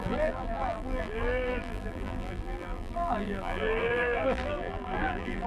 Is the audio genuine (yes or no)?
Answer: no